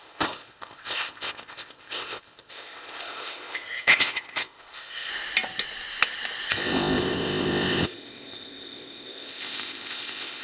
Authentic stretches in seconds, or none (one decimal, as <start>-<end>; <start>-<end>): 5.1-6.5